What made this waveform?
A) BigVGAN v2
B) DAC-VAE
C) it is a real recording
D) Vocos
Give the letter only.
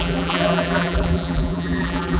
A